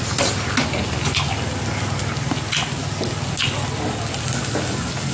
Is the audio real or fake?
real